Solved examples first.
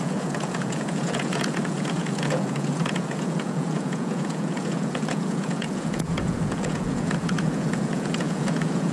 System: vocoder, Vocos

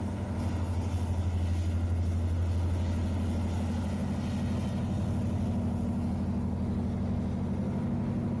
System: none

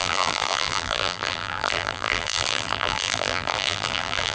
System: vocoder, BigVGAN v2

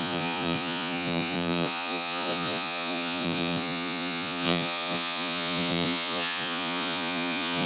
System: vocoder, Vocos